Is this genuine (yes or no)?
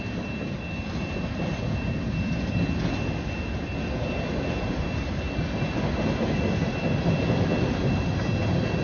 yes